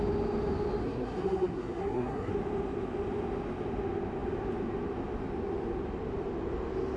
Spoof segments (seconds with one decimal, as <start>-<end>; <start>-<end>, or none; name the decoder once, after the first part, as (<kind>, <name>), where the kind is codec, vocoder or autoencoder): 0.8-2.3 (codec, SNAC)